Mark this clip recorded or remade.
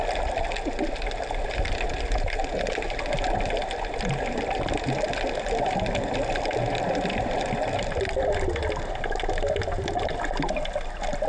recorded